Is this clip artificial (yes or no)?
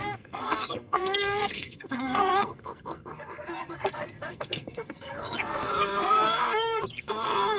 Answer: yes